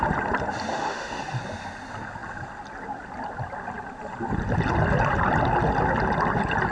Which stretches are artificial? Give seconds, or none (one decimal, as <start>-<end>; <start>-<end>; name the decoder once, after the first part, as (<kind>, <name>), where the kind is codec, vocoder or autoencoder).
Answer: 0.7-1.4 (autoencoder, DAC-VAE)